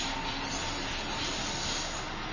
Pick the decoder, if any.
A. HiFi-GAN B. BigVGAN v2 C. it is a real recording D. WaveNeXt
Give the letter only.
C